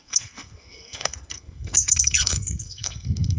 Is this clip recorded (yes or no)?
no